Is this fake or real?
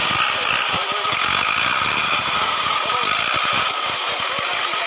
real